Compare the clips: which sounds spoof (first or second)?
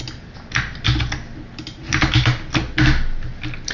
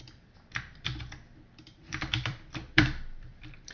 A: second